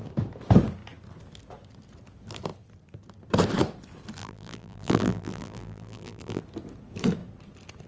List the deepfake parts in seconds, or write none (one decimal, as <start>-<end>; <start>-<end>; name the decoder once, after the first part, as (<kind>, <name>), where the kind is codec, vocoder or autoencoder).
4.2-6.4 (vocoder, BigVGAN v2)

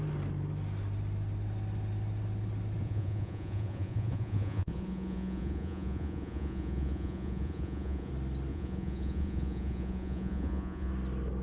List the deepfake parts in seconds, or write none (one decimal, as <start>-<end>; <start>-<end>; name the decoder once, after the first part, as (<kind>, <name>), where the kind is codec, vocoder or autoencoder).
2.8-8.1 (vocoder, Vocos); 8.5-10.9

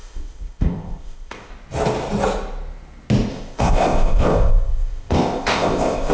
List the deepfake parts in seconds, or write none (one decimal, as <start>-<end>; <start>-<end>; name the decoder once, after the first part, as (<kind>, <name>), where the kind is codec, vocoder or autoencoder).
0.0-1.5 (codec, ZipCodec); 3.3-6.1

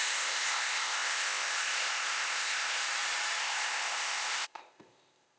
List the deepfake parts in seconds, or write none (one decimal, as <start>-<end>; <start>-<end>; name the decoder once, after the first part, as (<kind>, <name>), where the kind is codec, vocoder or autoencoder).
0.0-2.8 (codec, ZipCodec); 3.4-5.4

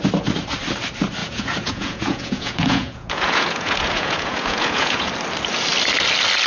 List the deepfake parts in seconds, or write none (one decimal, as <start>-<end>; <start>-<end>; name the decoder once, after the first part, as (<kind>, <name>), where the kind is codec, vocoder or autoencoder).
1.2-5.1 (vocoder, Vocos)